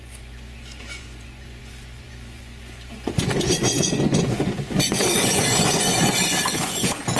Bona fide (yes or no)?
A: no